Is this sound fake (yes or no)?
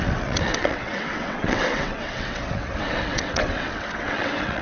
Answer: yes